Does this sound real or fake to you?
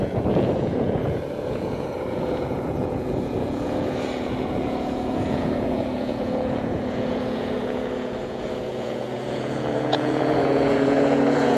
fake